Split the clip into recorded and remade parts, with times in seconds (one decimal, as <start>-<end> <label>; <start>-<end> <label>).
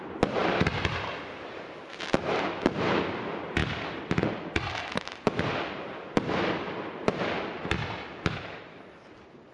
0.0-9.5 recorded